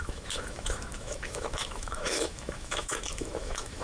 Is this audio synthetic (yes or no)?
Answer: yes